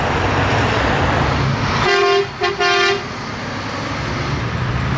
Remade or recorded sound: recorded